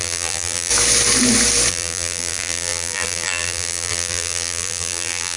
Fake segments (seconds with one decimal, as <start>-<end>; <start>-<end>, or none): 0.0-0.7; 1.7-5.4